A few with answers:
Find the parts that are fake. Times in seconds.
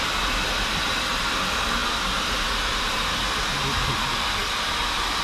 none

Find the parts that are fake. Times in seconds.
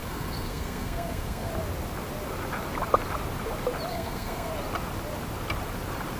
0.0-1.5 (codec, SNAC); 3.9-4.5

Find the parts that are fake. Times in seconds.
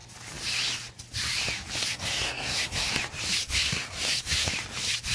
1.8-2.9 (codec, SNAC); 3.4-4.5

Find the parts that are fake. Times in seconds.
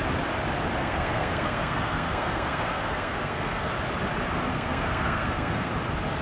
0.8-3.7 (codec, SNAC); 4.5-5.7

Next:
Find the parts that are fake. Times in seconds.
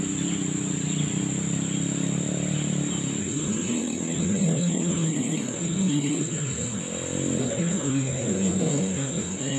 3.2-6.8 (codec, SNAC); 7.4-9.6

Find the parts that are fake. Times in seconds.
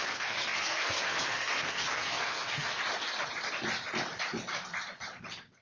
0.0-2.8 (codec, SNAC)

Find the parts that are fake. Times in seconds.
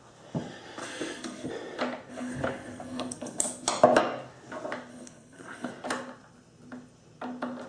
0.8-1.5 (codec, SNAC); 2.1-3.4; 4.9-5.7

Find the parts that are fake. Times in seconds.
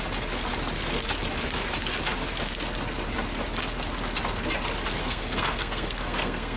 5.0-6.6 (codec, SNAC)